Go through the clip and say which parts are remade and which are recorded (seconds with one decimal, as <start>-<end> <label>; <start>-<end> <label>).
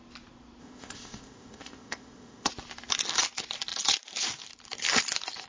0.0-0.6 recorded; 0.6-2.5 remade; 2.5-5.5 recorded